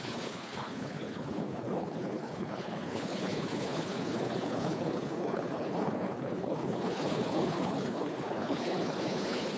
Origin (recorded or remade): remade